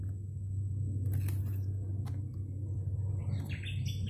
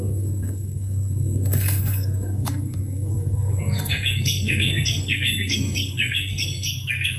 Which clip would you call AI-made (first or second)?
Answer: second